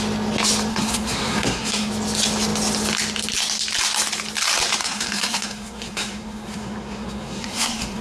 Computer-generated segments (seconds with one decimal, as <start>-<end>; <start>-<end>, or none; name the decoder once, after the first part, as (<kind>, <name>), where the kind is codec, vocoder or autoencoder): 0.7-1.9 (codec, SNAC); 4.8-8.0

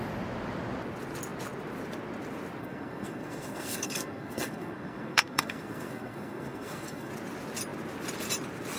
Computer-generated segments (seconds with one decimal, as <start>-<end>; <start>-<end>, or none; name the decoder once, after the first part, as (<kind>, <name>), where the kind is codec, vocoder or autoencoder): 2.6-7.1 (codec, SNAC)

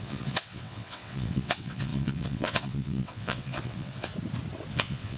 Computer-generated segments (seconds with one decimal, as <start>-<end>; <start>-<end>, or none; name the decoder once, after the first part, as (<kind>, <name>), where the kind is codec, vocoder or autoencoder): 0.0-4.1 (vocoder, WaveNeXt); 4.7-5.2

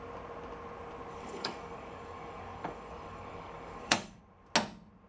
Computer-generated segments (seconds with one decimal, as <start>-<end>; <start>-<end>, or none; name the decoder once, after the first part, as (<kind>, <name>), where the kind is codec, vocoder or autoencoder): 1.1-4.2 (codec, DAC)